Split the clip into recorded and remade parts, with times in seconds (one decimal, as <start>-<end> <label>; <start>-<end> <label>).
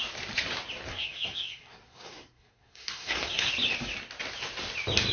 0.0-0.9 recorded; 0.9-3.5 remade; 3.5-5.1 recorded